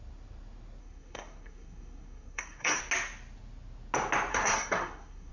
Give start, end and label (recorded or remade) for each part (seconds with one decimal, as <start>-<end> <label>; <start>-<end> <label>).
0.0-0.8 recorded; 0.8-2.8 remade; 2.8-4.3 recorded; 4.3-5.3 remade